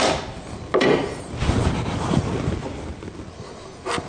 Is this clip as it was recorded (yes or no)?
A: yes